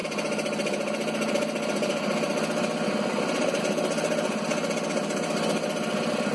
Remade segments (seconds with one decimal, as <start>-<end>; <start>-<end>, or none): none